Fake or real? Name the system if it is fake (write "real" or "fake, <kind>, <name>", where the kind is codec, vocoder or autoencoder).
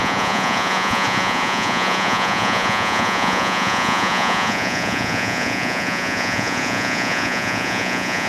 fake, vocoder, Vocos